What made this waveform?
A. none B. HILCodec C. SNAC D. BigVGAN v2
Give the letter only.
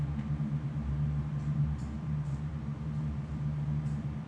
D